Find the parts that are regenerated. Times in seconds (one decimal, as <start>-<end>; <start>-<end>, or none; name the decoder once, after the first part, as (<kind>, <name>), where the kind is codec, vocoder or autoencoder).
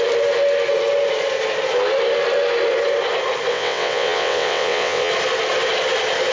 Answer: 3.5-5.1 (vocoder, WaveNeXt)